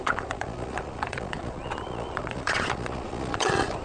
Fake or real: fake